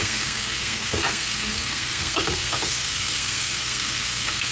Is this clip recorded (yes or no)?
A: no